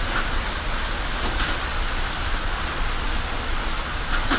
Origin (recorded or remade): recorded